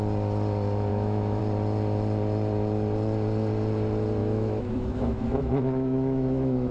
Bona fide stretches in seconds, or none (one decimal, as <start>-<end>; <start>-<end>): 0.0-0.9; 1.4-4.2